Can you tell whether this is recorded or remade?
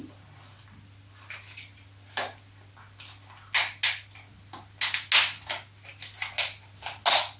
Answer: recorded